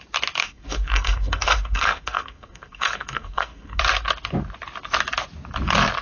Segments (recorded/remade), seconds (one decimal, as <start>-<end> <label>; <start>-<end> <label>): 0.0-0.4 recorded; 0.4-3.8 remade; 3.8-6.0 recorded

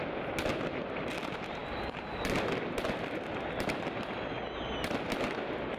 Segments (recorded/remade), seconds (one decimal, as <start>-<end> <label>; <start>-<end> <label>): 0.0-5.8 recorded

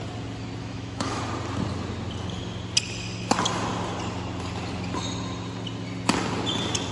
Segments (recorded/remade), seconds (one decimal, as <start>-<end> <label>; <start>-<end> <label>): 0.0-0.6 recorded; 0.6-1.2 remade; 1.2-6.9 recorded

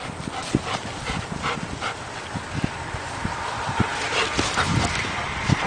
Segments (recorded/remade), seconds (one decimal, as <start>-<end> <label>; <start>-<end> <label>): 0.0-5.7 recorded

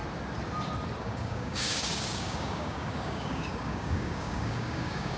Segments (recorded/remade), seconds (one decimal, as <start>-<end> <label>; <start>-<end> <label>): 0.0-1.0 recorded; 1.0-5.2 remade

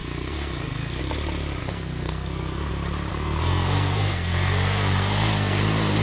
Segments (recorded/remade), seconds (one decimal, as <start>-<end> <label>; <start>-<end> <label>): 0.0-1.0 remade; 1.0-1.6 recorded; 1.6-2.7 remade; 2.7-3.1 recorded; 3.1-5.6 remade; 5.6-6.0 recorded

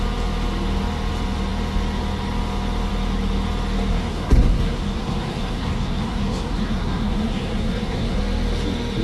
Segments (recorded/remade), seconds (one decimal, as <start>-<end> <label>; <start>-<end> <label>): 0.0-3.9 recorded; 3.9-8.2 remade; 8.2-9.0 recorded

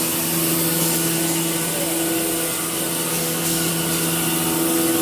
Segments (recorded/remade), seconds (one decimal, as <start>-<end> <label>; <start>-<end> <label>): 0.0-3.1 recorded; 3.1-3.7 remade; 3.7-5.0 recorded